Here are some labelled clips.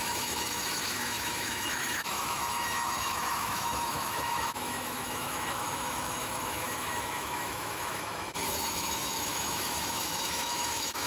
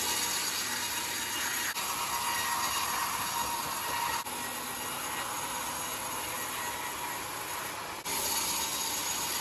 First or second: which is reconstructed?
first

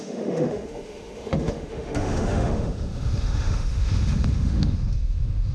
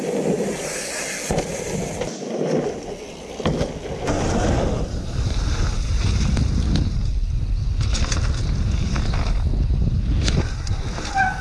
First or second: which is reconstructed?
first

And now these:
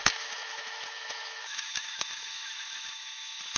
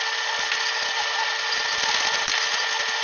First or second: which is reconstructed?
first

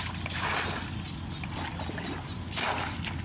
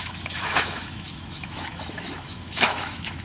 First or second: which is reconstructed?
second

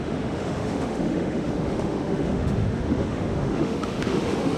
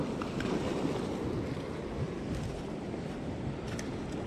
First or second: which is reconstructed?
first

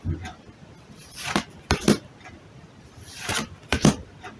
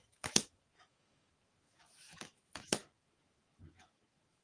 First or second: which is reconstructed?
second